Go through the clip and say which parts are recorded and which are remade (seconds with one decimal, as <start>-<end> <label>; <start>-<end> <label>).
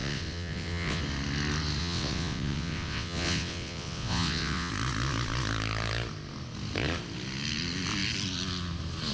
0.0-1.0 remade; 1.0-1.8 recorded; 1.8-4.7 remade; 4.7-9.1 recorded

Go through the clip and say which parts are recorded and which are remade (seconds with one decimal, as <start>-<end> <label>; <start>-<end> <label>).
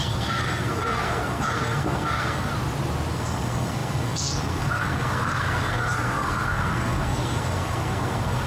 0.0-2.5 remade; 2.5-3.1 recorded; 3.1-8.5 remade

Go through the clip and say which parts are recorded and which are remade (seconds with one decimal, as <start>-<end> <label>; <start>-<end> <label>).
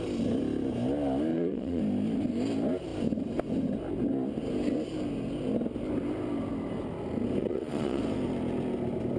0.0-1.3 recorded; 1.3-1.8 remade; 1.8-7.4 recorded; 7.4-8.0 remade; 8.0-9.2 recorded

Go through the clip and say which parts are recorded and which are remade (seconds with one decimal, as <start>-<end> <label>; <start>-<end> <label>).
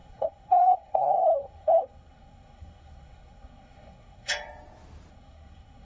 0.0-4.3 remade; 4.3-5.1 recorded; 5.1-5.8 remade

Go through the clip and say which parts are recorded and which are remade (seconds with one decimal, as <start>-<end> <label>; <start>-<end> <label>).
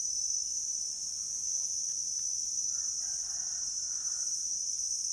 0.0-2.5 recorded; 2.5-5.1 remade